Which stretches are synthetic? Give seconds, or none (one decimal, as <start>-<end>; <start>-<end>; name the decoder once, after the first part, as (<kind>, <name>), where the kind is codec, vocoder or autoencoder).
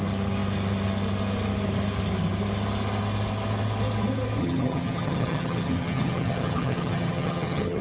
4.4-7.8 (vocoder, HiFi-GAN)